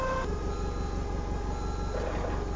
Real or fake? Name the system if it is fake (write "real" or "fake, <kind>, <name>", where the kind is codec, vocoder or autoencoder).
real